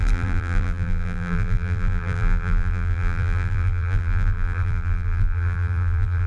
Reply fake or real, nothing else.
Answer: fake